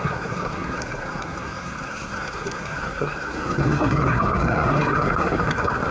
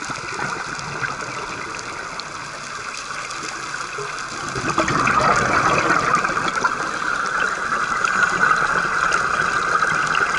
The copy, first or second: first